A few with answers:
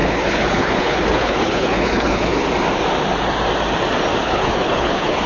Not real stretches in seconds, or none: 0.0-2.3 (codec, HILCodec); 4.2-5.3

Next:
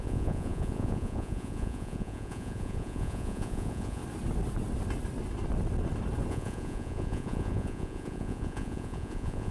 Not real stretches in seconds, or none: 0.0-4.0 (vocoder, Vocos); 6.3-9.5

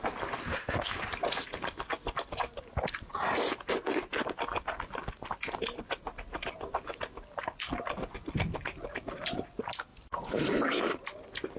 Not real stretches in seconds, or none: 0.5-1.0 (autoencoder, DAC-VAE)